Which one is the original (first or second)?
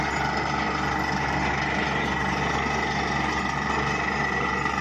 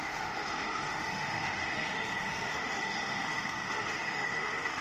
first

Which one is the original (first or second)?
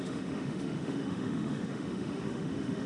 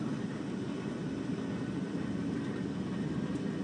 second